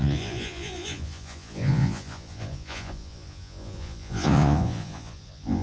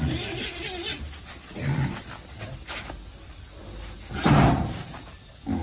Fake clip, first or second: first